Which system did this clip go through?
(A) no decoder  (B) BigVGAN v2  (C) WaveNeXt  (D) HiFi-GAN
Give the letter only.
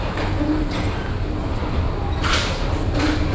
A